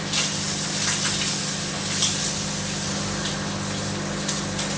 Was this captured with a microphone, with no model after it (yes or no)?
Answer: yes